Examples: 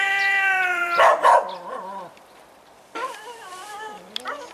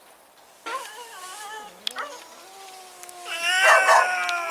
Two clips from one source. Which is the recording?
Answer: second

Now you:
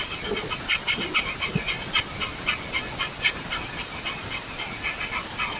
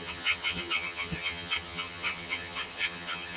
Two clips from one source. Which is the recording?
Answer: first